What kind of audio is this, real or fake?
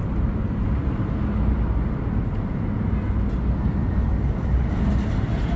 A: real